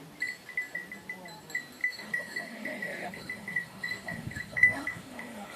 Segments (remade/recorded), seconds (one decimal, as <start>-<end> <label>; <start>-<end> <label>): 0.0-1.8 recorded; 1.8-5.6 remade